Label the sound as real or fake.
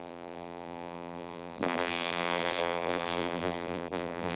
fake